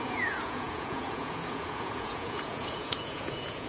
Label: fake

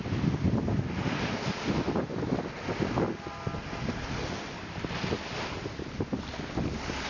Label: real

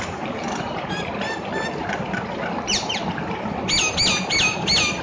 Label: real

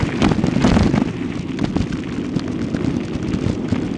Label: real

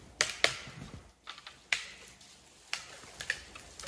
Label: real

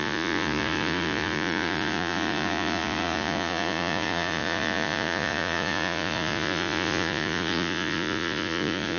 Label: fake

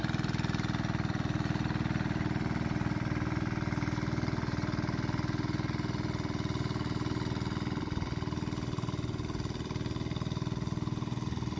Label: real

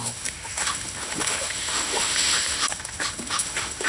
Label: fake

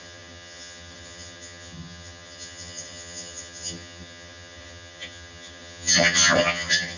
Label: fake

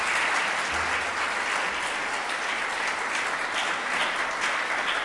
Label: real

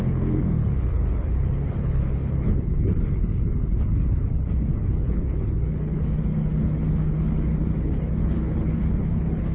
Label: fake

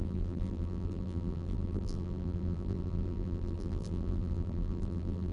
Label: fake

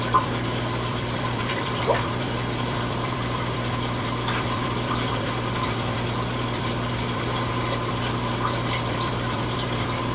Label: fake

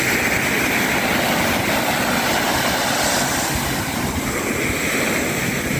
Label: real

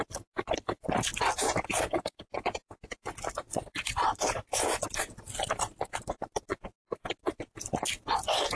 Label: real